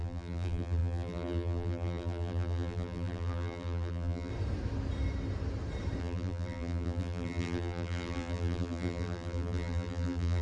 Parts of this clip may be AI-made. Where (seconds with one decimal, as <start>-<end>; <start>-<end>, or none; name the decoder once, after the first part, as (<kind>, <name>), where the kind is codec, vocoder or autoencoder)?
0.0-4.3 (vocoder, BigVGAN v2); 6.0-10.4